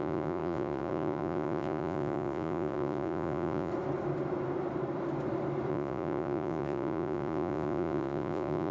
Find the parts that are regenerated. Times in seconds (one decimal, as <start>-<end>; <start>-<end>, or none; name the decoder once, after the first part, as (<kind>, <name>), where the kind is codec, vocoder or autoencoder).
0.0-3.7 (vocoder, Vocos); 5.7-8.7